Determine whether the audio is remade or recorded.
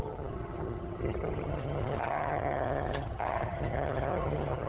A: remade